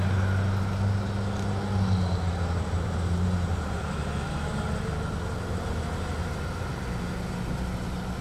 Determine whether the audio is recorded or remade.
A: recorded